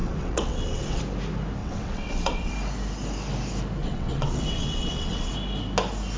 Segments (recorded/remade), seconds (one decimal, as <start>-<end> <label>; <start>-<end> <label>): 0.0-1.0 remade; 1.0-1.6 recorded; 1.6-2.5 remade; 2.5-3.8 recorded; 3.8-5.3 remade; 5.3-6.2 recorded